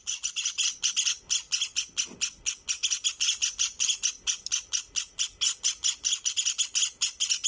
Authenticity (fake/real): real